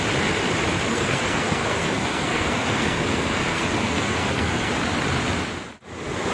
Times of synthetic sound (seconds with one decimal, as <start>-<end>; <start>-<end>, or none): 0.9-4.7